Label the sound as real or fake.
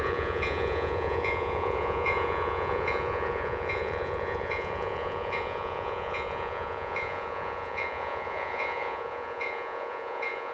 fake